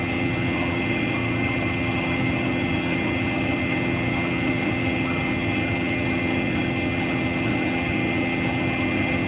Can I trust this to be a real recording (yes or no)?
no